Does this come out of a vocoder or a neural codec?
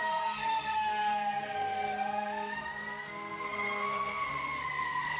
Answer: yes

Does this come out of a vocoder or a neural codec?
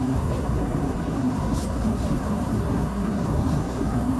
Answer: yes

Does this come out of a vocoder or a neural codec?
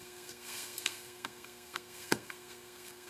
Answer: yes